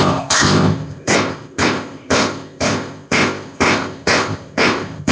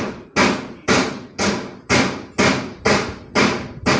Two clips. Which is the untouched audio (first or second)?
second